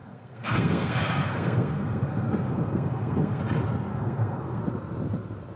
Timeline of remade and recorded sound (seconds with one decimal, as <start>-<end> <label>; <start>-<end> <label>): 0.0-3.4 remade; 3.4-3.9 recorded; 3.9-4.6 remade; 4.6-5.6 recorded